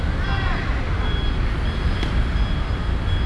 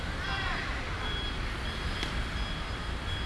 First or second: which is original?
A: first